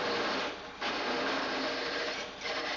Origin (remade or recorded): recorded